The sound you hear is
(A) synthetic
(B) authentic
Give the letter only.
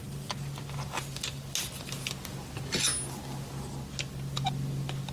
B